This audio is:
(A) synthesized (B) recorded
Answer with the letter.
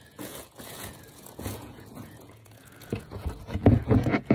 A